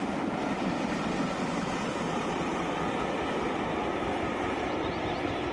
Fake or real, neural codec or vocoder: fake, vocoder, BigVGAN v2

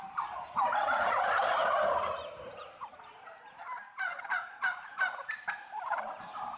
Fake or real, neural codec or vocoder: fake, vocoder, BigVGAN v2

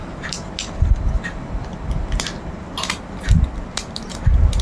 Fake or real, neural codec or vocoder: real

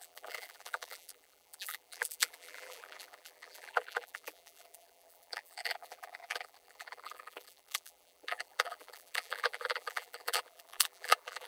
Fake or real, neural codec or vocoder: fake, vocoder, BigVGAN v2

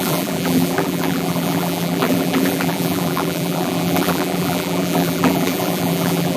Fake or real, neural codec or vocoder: fake, vocoder, BigVGAN v2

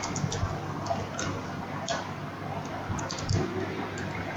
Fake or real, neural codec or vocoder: real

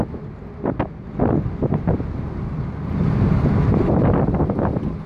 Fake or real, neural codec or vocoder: real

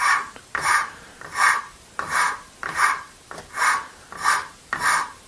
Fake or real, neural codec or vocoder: fake, vocoder, BigVGAN v2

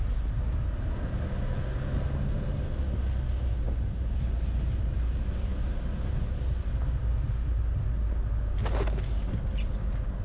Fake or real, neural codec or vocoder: real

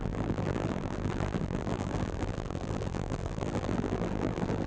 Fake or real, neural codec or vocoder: fake, vocoder, BigVGAN v2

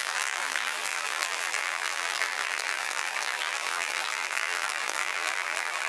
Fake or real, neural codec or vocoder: fake, vocoder, BigVGAN v2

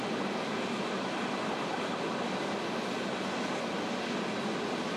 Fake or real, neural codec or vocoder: real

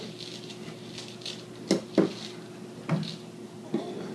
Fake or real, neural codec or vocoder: real